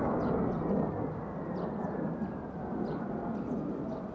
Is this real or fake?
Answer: real